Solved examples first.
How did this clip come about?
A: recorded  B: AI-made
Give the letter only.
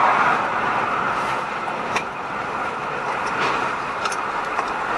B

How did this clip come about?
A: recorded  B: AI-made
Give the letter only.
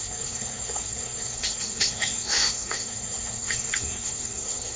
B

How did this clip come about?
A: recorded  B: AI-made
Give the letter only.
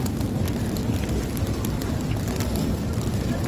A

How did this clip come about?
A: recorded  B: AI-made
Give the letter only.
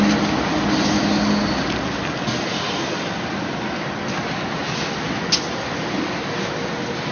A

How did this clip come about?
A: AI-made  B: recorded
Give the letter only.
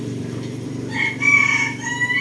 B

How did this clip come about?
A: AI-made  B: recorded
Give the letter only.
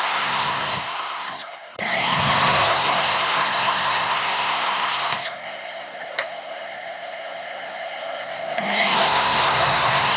A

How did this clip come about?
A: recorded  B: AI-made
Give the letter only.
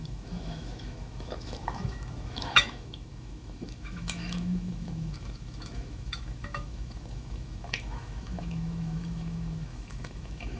B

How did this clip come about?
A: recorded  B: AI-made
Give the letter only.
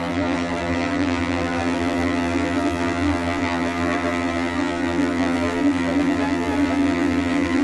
B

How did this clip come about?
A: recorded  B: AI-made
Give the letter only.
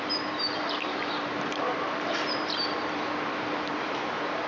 B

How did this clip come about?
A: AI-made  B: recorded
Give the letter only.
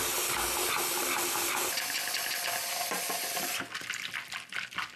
B